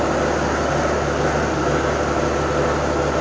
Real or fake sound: real